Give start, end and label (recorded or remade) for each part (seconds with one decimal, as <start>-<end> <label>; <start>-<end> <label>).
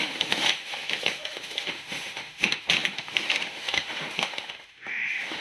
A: 0.0-5.4 remade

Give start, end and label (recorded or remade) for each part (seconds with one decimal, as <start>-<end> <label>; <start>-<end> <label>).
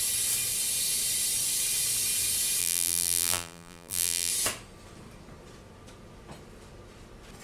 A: 0.0-2.6 recorded; 2.6-4.3 remade; 4.3-7.4 recorded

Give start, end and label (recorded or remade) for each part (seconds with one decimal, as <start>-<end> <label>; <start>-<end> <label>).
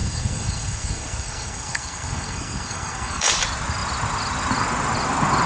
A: 0.0-3.3 remade; 3.3-5.5 recorded